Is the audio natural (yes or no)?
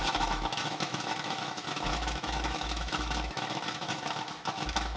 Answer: no